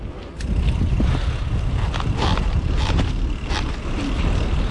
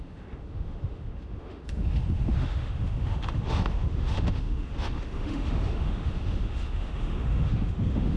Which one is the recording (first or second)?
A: first